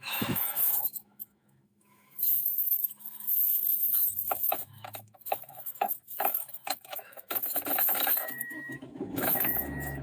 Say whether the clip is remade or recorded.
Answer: remade